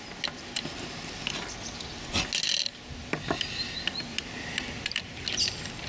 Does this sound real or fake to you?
real